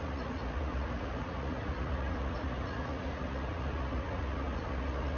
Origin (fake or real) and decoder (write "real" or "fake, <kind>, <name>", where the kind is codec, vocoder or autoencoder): fake, vocoder, Vocos